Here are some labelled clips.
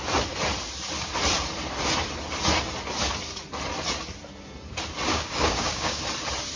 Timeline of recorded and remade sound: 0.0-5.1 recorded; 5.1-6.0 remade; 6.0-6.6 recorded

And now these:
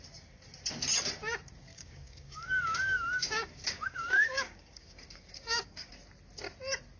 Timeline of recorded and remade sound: 0.0-1.7 recorded; 1.7-5.9 remade; 5.9-7.0 recorded

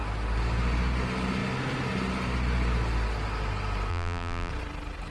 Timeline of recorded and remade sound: 0.0-3.9 recorded; 3.9-4.5 remade; 4.5-5.1 recorded

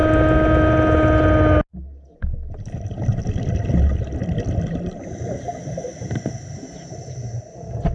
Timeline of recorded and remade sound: 0.0-7.9 recorded

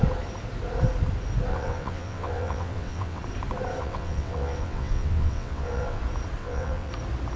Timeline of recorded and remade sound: 0.0-1.5 recorded; 1.5-3.2 remade; 3.2-3.8 recorded; 3.8-6.0 remade; 6.0-6.4 recorded; 6.4-6.9 remade; 6.9-7.4 recorded

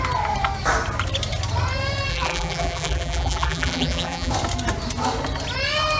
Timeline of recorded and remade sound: 0.0-2.1 recorded; 2.1-4.3 remade; 4.3-6.0 recorded